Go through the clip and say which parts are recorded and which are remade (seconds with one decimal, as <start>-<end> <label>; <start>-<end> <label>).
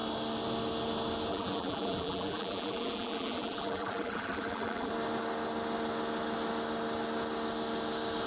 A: 0.0-1.3 recorded; 1.3-4.9 remade; 4.9-8.3 recorded